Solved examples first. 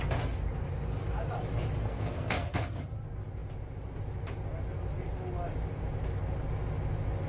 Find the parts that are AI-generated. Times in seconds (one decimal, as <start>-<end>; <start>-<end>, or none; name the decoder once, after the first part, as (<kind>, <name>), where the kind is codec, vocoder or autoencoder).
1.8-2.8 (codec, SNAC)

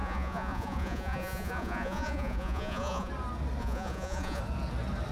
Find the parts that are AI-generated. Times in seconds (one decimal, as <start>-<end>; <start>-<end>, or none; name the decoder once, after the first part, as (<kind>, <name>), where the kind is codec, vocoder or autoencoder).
0.0-3.1 (vocoder, Vocos); 3.6-4.4

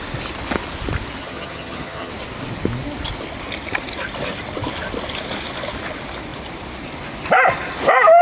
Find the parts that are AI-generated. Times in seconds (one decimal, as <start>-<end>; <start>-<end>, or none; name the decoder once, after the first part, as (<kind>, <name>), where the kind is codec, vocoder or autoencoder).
1.2-2.1 (vocoder, HiFi-GAN)